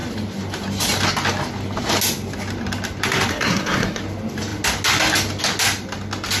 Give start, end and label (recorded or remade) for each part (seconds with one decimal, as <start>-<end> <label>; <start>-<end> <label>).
0.0-3.3 recorded; 3.3-4.0 remade; 4.0-6.4 recorded